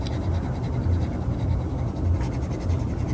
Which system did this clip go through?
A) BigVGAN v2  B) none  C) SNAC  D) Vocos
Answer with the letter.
B